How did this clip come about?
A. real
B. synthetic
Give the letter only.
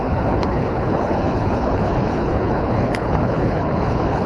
B